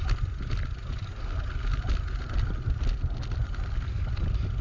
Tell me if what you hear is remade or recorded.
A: recorded